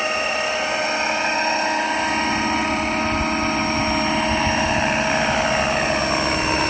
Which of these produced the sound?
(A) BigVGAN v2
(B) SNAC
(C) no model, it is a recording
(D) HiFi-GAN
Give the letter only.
C